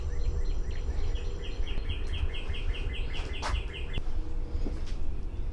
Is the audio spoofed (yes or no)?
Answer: no